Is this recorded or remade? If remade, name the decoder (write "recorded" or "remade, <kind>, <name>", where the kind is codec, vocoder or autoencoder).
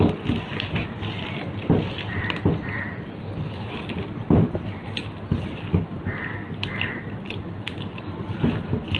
recorded